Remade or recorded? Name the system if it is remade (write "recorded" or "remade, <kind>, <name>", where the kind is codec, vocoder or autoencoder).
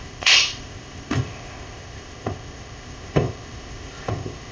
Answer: remade, codec, ZipCodec